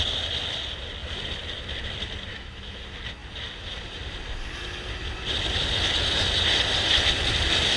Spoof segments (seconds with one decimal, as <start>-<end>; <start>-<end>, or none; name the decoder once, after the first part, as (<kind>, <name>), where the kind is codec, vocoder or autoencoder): 2.3-2.8 (autoencoder, DAC-VAE)